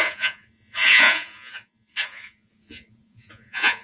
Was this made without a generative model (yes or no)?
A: no